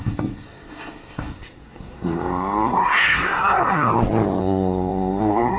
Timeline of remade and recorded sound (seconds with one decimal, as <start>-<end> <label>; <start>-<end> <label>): 0.0-3.9 remade; 3.9-4.4 recorded; 4.4-5.6 remade